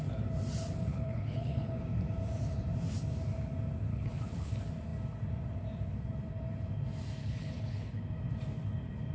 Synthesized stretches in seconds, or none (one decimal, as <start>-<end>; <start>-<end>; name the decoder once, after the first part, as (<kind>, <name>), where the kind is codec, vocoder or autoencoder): 0.9-1.8 (codec, HILCodec); 3.9-4.5; 7.2-8.0